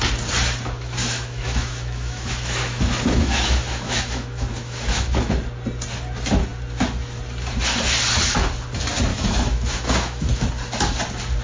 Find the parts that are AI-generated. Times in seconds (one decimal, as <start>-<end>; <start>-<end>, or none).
1.0-5.2; 9.1-10.5